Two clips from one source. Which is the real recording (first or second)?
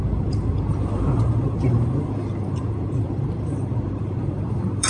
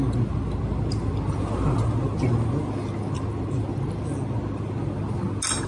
second